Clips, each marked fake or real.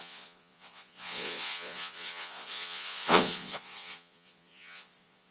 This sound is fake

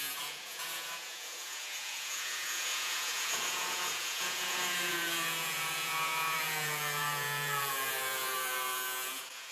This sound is fake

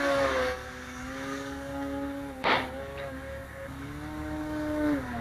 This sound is fake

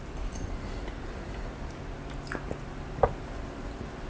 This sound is real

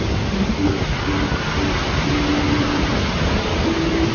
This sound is real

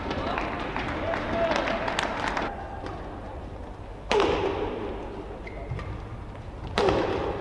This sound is real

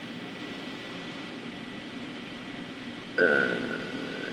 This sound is real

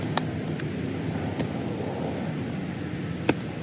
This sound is real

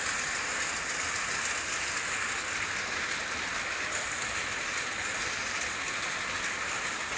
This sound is real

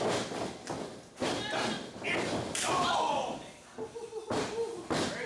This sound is real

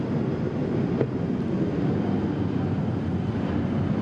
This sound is real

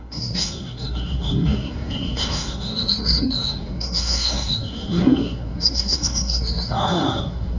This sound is fake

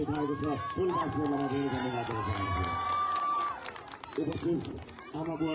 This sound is fake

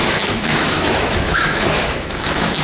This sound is fake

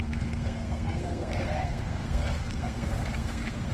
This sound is fake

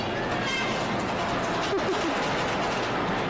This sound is real